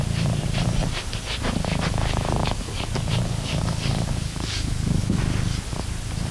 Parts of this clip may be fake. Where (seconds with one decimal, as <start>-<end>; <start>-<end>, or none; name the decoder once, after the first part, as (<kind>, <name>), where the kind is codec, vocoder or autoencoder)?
2.4-5.2 (codec, DAC)